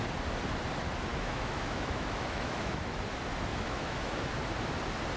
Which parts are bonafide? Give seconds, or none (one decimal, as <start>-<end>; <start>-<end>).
0.0-1.1; 2.8-3.5; 4.3-5.2

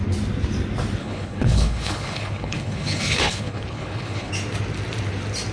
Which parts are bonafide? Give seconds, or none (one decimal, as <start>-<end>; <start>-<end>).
0.0-1.0; 4.3-5.5

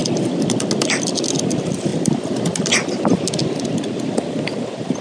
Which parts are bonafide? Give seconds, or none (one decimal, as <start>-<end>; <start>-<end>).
0.0-5.0

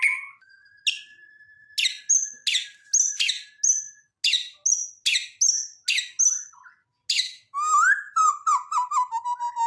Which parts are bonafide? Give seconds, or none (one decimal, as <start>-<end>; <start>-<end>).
0.0-9.7